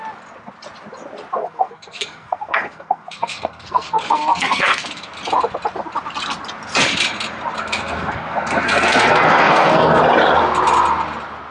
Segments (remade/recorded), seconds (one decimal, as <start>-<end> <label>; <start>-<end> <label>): 0.0-1.4 recorded; 1.4-5.2 remade; 5.2-7.6 recorded; 7.6-10.0 remade; 10.0-11.5 recorded